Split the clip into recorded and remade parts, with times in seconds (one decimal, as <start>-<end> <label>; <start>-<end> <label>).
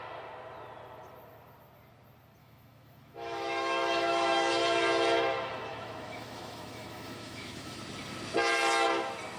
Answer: 0.0-2.4 recorded; 2.4-4.5 remade; 4.5-5.7 recorded; 5.7-7.8 remade; 7.8-9.4 recorded